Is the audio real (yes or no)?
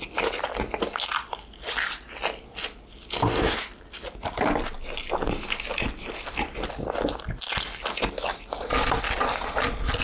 yes